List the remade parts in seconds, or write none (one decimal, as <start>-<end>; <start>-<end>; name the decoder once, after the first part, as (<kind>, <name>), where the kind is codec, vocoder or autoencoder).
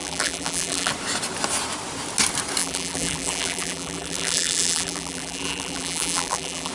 0.0-0.9 (vocoder, BigVGAN v2); 2.6-6.7